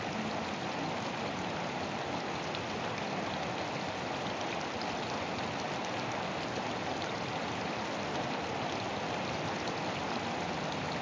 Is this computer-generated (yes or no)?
no